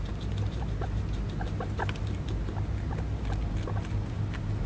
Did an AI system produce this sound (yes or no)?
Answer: no